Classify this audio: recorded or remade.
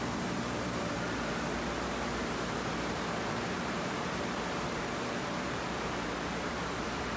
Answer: remade